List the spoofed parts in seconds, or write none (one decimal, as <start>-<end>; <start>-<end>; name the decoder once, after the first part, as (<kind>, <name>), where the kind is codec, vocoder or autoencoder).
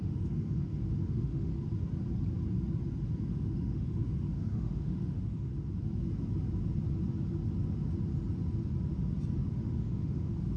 0.0-1.5 (autoencoder, DAC-VAE); 3.3-5.5; 9.5-10.6